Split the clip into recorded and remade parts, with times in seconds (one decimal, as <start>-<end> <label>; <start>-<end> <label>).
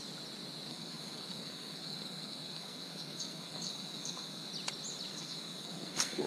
0.0-0.7 recorded; 0.7-4.5 remade; 4.5-5.1 recorded; 5.1-6.3 remade